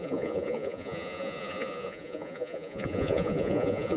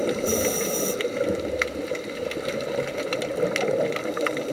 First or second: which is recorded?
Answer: second